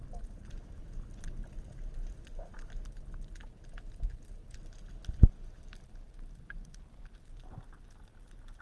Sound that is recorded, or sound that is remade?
recorded